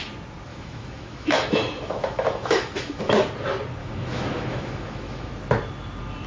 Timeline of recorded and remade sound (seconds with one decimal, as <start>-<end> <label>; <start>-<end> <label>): 0.0-0.5 recorded; 0.5-3.0 remade; 3.0-3.8 recorded; 3.8-5.3 remade; 5.3-6.3 recorded